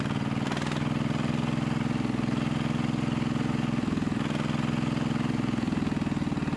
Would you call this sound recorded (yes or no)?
yes